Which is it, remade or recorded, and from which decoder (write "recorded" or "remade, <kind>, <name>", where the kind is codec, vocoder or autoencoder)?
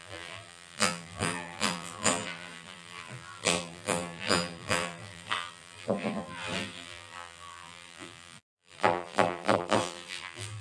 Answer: remade, vocoder, BigVGAN v2